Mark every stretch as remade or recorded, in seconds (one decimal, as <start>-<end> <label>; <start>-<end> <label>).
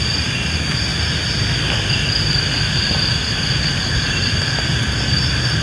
0.0-5.6 recorded